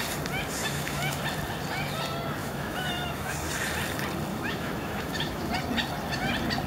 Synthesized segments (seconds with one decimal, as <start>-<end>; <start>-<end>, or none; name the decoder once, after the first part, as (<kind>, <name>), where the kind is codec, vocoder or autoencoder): 0.6-1.2 (autoencoder, DAC-VAE); 2.4-3.3; 4.3-5.5